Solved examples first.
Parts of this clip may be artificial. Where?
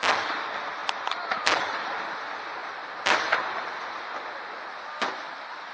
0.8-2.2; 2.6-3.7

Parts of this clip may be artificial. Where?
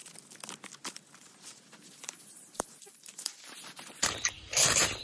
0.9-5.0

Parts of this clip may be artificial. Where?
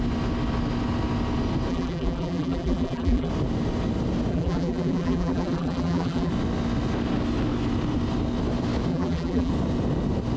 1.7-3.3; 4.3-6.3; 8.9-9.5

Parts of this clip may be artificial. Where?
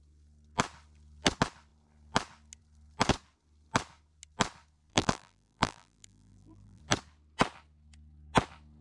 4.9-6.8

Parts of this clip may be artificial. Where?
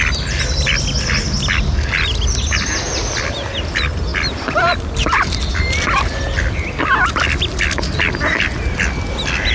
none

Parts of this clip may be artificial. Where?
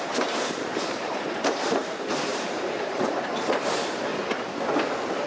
0.0-4.1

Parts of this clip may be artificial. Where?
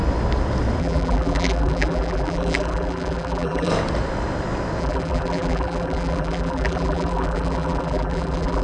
0.8-3.7; 4.8-8.6